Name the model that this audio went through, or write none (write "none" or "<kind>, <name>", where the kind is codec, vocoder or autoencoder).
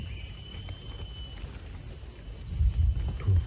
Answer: none